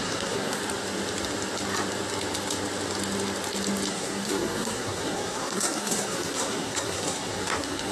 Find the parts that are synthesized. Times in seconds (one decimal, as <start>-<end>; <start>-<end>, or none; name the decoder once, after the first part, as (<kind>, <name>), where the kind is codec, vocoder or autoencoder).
0.0-0.6 (codec, SNAC); 3.9-7.9